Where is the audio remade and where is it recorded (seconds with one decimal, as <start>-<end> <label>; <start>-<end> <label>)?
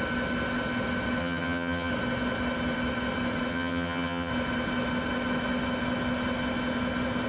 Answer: 0.0-1.2 recorded; 1.2-1.9 remade; 1.9-3.5 recorded; 3.5-4.3 remade; 4.3-7.3 recorded